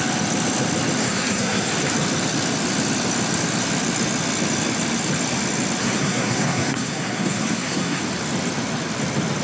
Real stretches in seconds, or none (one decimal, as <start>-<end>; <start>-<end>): 0.0-1.0; 1.7-5.8; 8.0-9.4